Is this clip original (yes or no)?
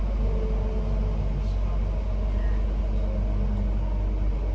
yes